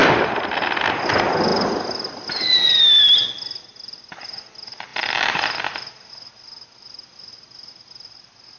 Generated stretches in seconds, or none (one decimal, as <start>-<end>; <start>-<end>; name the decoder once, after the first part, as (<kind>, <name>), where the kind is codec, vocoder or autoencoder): none